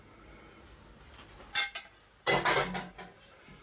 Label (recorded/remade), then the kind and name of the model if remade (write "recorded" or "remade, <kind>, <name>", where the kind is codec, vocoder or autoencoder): recorded